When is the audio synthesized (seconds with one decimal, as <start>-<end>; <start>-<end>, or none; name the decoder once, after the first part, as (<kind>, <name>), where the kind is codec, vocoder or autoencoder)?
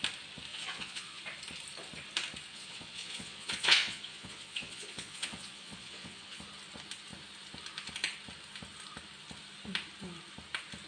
0.5-1.2 (vocoder, Vocos); 2.5-6.4